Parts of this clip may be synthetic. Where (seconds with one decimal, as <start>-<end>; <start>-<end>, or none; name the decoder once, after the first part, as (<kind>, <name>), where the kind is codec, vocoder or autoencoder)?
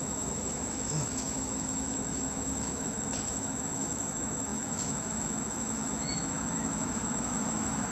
0.0-7.9 (autoencoder, DAC-VAE)